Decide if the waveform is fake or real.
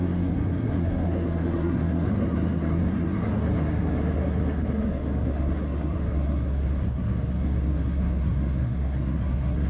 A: fake